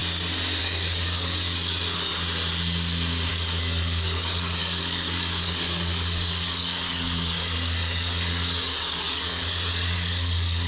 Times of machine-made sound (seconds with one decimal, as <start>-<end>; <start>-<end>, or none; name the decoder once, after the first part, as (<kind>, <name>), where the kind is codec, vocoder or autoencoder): 0.6-2.1 (codec, DAC); 3.3-10.7